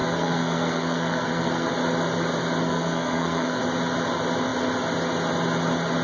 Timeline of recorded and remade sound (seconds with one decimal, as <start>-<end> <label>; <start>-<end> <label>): 0.0-1.7 remade; 1.7-2.6 recorded; 2.6-3.6 remade; 3.6-6.0 recorded